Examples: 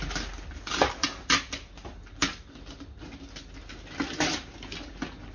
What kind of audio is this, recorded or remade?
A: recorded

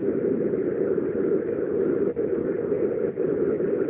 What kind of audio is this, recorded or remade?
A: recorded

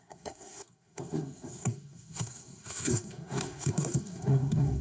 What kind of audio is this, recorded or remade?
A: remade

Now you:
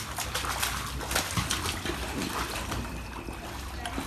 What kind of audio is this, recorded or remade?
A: recorded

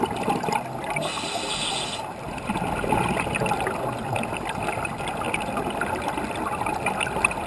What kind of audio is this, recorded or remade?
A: recorded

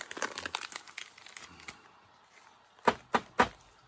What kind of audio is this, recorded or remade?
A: recorded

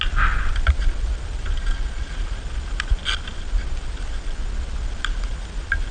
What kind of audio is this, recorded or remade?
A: recorded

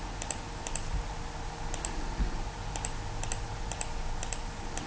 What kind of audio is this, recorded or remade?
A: recorded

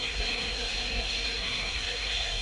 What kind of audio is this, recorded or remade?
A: remade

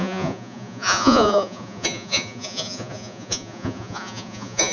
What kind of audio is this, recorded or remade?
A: remade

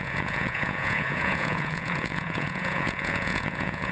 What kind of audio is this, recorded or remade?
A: remade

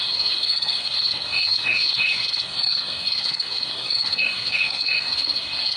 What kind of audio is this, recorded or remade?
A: remade